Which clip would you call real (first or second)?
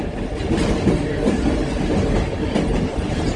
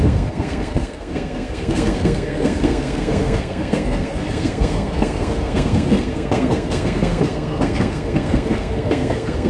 first